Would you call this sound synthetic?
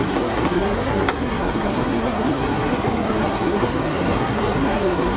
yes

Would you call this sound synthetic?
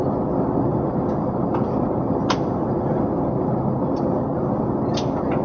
no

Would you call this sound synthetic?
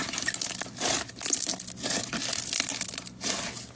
no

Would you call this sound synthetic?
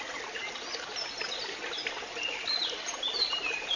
no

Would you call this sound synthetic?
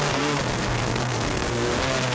yes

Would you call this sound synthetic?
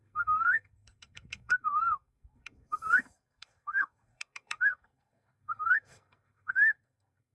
yes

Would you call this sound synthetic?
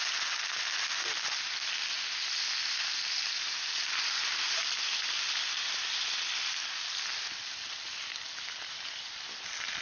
no